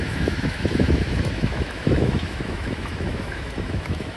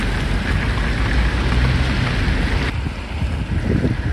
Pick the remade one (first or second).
first